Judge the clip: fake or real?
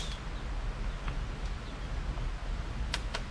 real